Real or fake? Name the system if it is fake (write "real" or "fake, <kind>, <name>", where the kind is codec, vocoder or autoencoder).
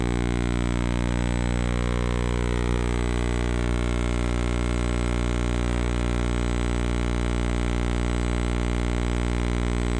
real